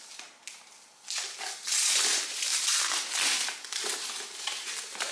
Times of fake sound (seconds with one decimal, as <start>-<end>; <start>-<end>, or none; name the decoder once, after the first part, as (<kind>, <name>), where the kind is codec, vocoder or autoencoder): none